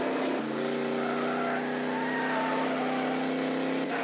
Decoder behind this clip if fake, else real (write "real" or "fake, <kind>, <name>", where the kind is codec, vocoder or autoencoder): real